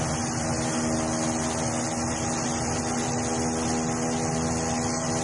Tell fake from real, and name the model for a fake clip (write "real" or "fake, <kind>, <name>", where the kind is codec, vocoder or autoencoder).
real